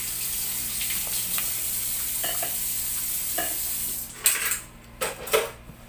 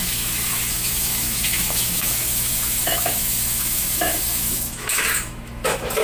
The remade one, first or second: second